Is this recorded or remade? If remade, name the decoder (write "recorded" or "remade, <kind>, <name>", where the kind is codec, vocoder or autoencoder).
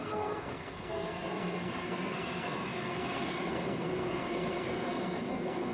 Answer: remade, codec, SNAC